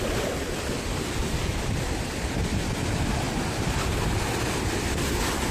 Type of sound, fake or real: real